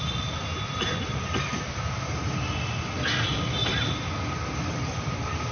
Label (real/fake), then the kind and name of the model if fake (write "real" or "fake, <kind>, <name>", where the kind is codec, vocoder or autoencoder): real